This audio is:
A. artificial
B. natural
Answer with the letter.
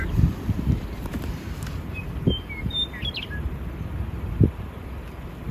B